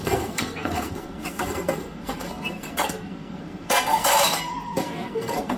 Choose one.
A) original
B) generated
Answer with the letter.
B